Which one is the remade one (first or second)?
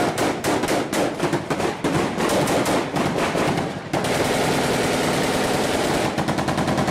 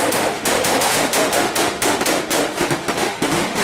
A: second